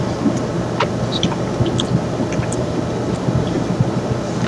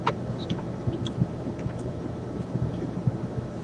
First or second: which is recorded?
first